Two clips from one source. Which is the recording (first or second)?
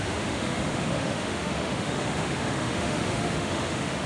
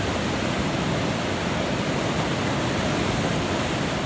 second